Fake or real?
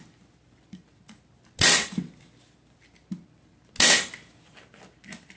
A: real